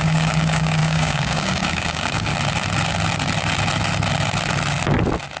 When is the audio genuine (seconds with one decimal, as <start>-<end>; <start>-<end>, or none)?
2.3-5.4